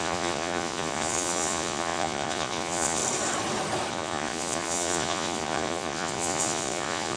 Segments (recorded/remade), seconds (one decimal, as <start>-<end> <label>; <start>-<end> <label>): 0.0-3.0 remade; 3.0-3.9 recorded; 3.9-7.2 remade